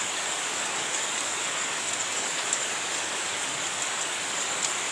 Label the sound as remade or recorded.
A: remade